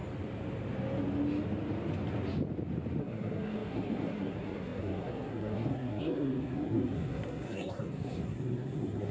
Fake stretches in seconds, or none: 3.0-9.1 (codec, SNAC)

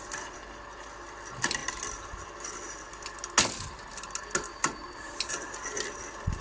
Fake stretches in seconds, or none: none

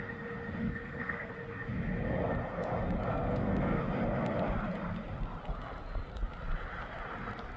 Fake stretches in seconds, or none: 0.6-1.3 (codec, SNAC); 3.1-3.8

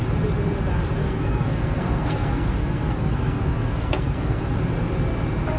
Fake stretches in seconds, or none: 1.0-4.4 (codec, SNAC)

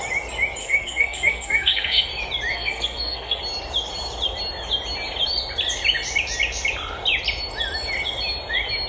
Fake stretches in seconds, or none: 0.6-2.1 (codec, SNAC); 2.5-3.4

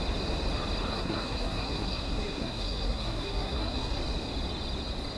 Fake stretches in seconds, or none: 0.9-4.0 (codec, SNAC)